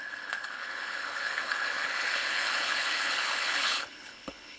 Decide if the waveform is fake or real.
fake